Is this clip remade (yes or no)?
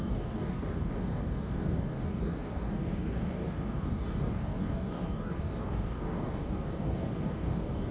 yes